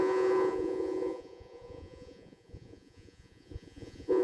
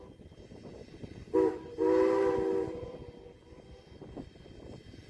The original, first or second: second